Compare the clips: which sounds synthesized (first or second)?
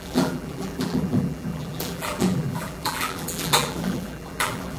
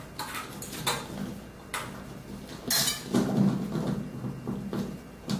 first